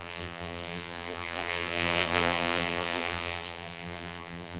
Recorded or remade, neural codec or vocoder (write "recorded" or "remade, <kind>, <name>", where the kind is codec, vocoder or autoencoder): remade, vocoder, BigVGAN v2